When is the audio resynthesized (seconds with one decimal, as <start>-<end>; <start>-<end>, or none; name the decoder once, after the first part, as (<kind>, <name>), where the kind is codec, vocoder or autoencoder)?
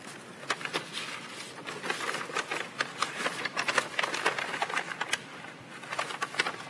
none